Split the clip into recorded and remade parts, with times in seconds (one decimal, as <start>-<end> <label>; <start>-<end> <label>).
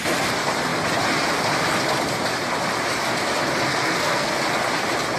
0.0-3.7 recorded; 3.7-4.4 remade; 4.4-5.2 recorded